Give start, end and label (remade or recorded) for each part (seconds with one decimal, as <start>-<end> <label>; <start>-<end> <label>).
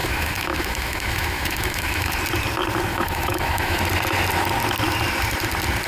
0.0-2.2 remade; 2.2-2.9 recorded; 2.9-3.8 remade; 3.8-5.9 recorded